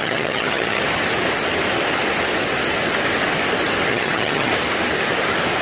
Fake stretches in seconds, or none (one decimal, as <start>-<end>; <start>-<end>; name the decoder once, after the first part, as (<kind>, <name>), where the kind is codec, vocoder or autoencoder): 0.0-0.8 (vocoder, HiFi-GAN); 3.9-4.5